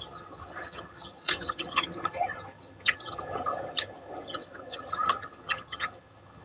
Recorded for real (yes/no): no